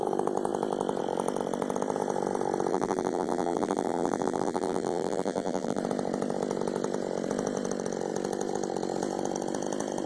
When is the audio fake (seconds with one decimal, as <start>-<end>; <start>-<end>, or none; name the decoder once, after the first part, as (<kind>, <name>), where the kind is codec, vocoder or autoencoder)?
2.7-5.8 (vocoder, BigVGAN v2)